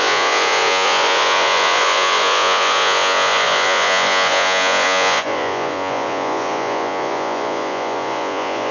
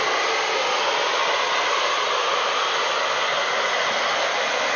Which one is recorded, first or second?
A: second